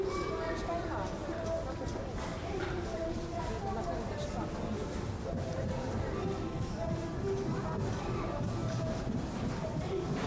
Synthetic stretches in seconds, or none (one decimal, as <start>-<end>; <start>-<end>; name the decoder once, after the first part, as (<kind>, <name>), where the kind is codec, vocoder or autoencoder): 1.2-1.7 (vocoder, BigVGAN v2); 2.3-3.6; 5.5-6.0; 8.6-9.8